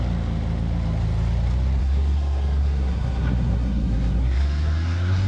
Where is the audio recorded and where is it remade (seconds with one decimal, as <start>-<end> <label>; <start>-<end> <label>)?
0.0-1.8 recorded; 1.8-5.3 remade